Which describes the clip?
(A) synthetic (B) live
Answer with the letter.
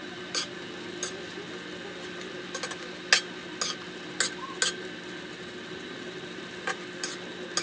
B